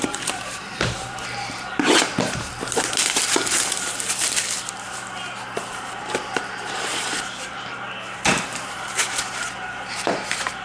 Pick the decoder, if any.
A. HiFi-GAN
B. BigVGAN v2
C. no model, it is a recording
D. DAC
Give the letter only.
B